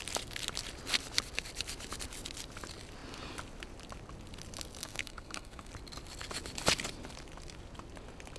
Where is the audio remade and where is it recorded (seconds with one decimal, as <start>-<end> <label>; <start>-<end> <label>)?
0.0-4.8 recorded; 4.8-5.7 remade; 5.7-8.4 recorded